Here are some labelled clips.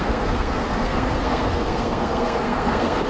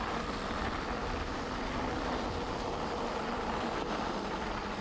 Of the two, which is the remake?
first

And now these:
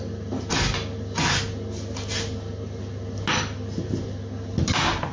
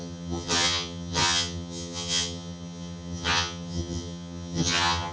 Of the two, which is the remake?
second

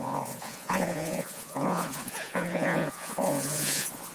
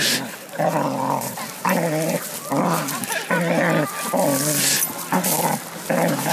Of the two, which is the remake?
first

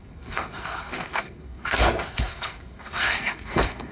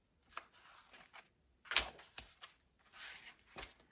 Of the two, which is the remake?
first